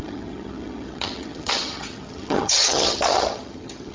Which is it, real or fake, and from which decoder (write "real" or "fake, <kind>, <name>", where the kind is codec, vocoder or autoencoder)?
fake, vocoder, HiFi-GAN